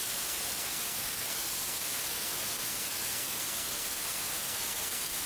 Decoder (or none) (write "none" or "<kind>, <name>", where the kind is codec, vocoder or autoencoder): codec, SNAC